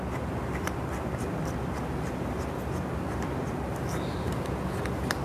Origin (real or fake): real